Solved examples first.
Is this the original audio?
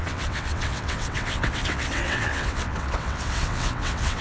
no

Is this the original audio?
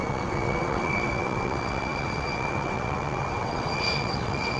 no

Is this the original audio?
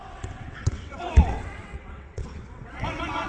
no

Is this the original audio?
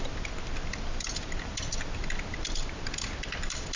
yes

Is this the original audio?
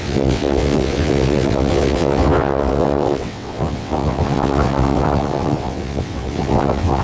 no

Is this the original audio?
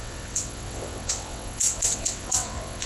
no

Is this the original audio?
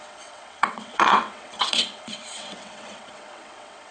no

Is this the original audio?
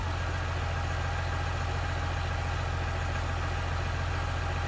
yes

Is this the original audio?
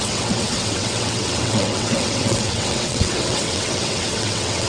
no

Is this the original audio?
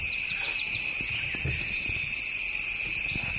yes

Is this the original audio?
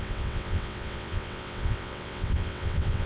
no